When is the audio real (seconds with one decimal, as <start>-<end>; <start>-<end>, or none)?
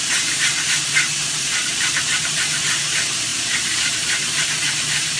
none